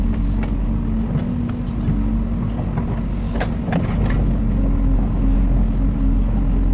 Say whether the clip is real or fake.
real